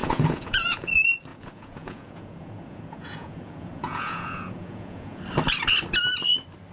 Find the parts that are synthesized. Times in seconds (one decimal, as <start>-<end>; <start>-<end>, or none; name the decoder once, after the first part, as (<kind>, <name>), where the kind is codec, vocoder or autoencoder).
0.0-0.9 (vocoder, Vocos); 1.3-5.2